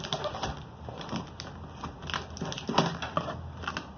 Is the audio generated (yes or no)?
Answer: no